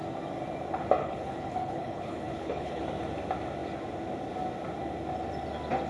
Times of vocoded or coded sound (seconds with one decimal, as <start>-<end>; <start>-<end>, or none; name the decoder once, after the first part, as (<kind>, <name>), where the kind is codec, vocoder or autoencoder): 1.0-2.8 (codec, HILCodec)